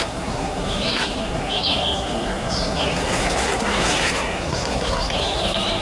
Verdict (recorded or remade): remade